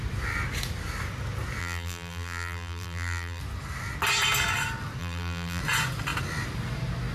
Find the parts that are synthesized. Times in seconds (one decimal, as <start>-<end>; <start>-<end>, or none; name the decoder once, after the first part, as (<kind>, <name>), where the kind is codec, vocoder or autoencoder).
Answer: 1.6-3.4 (vocoder, BigVGAN v2); 5.0-5.6